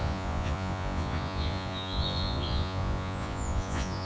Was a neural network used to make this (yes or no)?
yes